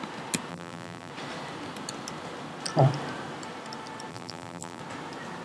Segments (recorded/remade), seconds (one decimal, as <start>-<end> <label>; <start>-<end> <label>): 0.0-0.5 recorded; 0.5-1.1 remade; 1.1-4.1 recorded; 4.1-4.8 remade; 4.8-5.4 recorded